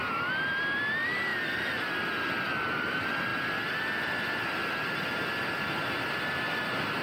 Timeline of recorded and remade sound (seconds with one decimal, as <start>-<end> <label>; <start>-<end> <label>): 0.0-7.0 recorded

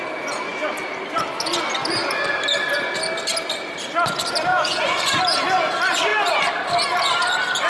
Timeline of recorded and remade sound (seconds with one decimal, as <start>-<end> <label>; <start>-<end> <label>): 0.0-4.5 recorded; 4.5-5.2 remade; 5.2-7.7 recorded

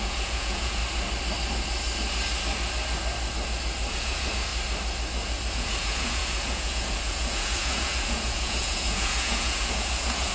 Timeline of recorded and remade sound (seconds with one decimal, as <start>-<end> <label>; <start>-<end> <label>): 0.0-0.8 remade; 0.8-3.9 recorded; 3.9-4.5 remade; 4.5-5.5 recorded; 5.5-10.3 remade

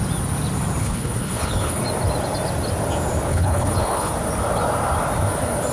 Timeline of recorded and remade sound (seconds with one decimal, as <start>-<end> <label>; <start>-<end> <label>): 0.0-0.8 recorded; 0.8-1.8 remade; 1.8-3.3 recorded; 3.3-4.1 remade; 4.1-5.7 recorded

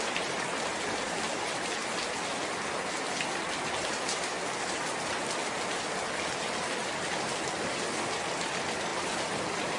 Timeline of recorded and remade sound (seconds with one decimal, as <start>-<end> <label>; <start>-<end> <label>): 0.0-9.8 recorded

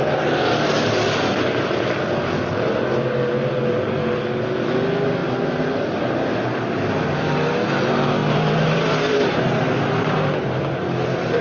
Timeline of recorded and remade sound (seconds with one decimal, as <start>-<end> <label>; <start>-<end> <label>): 0.0-5.2 recorded; 5.2-6.9 remade; 6.9-8.2 recorded; 8.2-11.4 remade

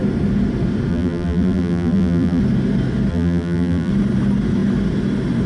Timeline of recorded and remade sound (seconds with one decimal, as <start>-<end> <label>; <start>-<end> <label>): 0.0-0.9 recorded; 0.9-2.4 remade; 2.4-3.1 recorded; 3.1-3.9 remade; 3.9-5.5 recorded

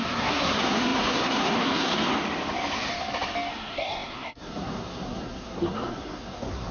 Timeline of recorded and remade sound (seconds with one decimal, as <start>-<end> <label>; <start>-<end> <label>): 0.0-1.9 remade; 1.9-3.5 recorded; 3.5-6.7 remade